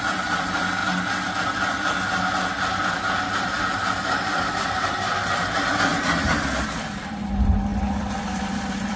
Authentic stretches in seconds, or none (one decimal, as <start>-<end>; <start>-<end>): 0.8-2.9; 5.9-6.7